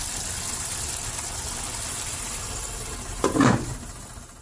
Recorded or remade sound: recorded